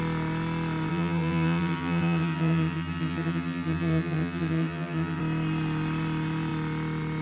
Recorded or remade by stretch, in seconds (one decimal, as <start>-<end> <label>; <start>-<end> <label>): 0.0-0.9 recorded; 0.9-5.2 remade; 5.2-7.2 recorded